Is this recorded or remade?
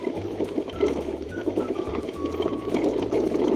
remade